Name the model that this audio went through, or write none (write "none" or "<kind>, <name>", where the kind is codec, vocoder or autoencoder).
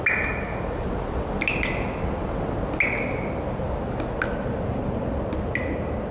none